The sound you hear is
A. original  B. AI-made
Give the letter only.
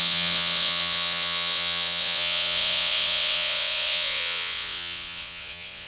B